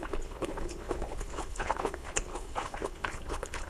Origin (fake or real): fake